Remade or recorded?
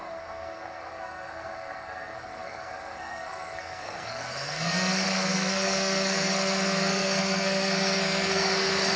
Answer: remade